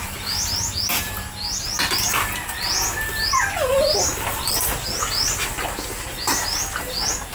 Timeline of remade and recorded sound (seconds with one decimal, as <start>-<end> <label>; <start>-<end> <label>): 0.0-7.3 recorded

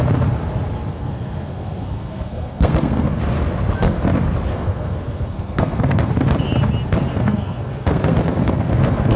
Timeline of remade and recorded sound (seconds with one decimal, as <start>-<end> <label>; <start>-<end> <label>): 0.0-0.9 recorded; 0.9-3.2 remade; 3.2-4.5 recorded; 4.5-6.1 remade; 6.1-7.1 recorded; 7.1-9.2 remade

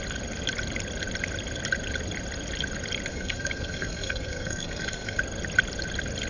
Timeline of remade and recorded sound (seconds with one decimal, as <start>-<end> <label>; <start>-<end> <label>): 0.0-3.1 recorded; 3.1-5.2 remade; 5.2-6.3 recorded

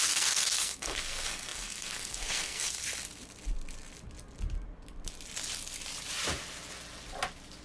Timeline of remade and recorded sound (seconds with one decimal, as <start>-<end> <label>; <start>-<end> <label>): 0.0-2.8 remade; 2.8-7.6 recorded